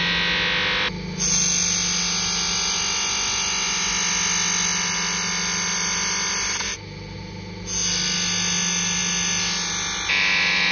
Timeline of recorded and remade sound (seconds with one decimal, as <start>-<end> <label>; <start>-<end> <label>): 0.0-10.7 recorded